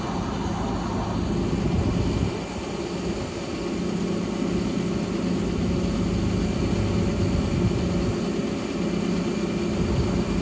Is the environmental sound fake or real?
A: real